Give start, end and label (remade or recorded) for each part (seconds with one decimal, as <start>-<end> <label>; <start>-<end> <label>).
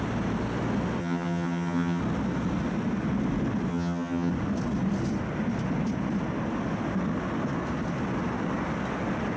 0.0-1.0 recorded; 1.0-2.0 remade; 2.0-3.7 recorded; 3.7-4.3 remade; 4.3-9.4 recorded